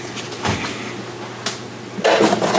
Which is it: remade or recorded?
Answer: recorded